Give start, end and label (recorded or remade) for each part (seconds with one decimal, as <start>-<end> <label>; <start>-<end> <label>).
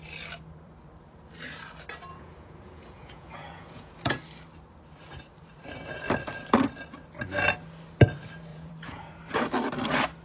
0.0-2.1 recorded; 2.1-4.1 remade; 4.1-8.5 recorded; 8.5-9.2 remade; 9.2-10.2 recorded